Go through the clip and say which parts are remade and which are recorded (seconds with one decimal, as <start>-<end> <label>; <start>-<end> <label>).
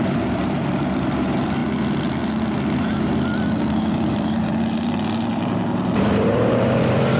0.0-1.6 remade; 1.6-2.2 recorded; 2.2-4.4 remade; 4.4-5.3 recorded; 5.3-7.2 remade